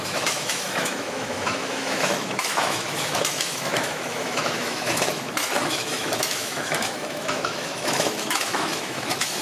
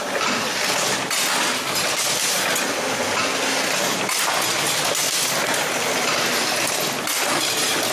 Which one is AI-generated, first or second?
first